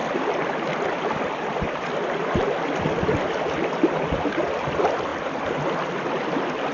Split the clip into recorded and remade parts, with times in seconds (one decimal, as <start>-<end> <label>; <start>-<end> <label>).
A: 0.0-6.7 recorded